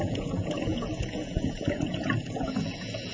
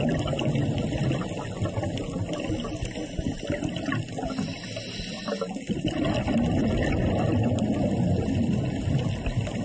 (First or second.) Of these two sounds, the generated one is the first